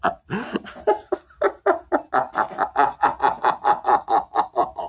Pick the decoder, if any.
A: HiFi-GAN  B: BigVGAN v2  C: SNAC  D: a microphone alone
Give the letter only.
D